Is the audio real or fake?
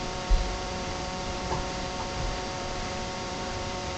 fake